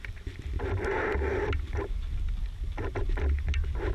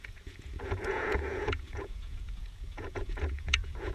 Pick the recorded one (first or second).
first